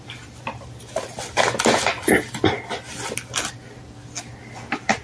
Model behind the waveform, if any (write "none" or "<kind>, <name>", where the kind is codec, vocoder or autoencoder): none